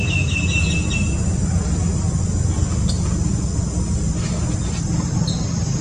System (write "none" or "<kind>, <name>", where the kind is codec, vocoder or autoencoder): none